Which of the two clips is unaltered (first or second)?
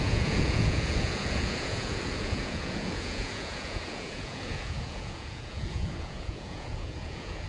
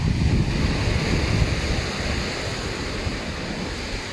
second